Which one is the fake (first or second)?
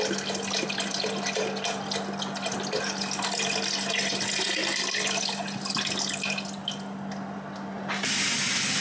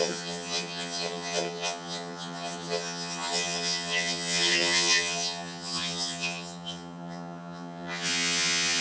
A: second